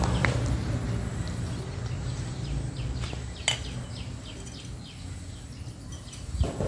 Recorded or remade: recorded